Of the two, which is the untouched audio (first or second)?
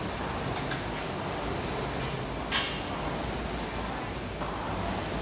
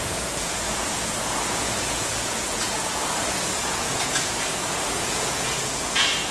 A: first